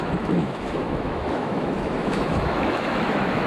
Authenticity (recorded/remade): remade